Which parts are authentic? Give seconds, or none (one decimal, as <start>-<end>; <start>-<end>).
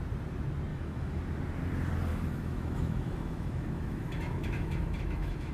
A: 0.0-0.7; 1.2-2.1